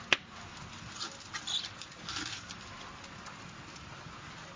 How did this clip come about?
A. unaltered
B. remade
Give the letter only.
A